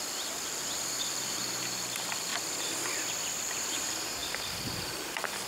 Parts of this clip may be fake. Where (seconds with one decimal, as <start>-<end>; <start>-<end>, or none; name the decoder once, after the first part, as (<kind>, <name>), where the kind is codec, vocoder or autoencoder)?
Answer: 0.0-2.3 (vocoder, BigVGAN v2); 3.4-5.5